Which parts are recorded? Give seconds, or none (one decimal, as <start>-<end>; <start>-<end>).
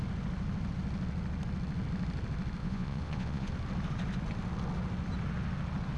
0.0-2.6; 3.5-6.0